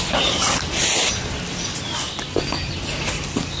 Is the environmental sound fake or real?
real